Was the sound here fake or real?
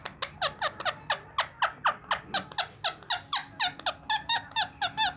real